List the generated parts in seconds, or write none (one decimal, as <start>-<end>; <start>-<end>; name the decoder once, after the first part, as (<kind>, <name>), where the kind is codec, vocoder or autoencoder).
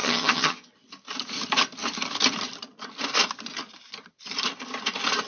0.0-0.7 (vocoder, HiFi-GAN)